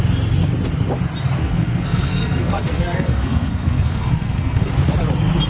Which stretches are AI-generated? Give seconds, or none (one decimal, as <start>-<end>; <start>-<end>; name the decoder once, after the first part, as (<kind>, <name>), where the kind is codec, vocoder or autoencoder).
1.4-4.7 (codec, SNAC)